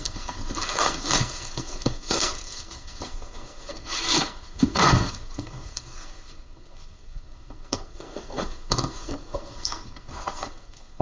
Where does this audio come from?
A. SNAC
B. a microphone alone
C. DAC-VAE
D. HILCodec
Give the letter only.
A